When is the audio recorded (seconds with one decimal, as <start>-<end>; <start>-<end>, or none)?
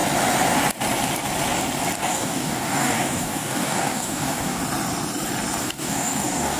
0.0-2.0; 4.6-5.6